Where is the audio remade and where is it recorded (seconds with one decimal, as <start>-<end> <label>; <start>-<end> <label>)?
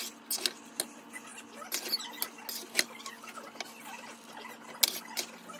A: 0.0-5.6 recorded